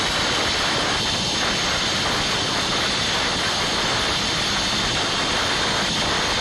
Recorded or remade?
recorded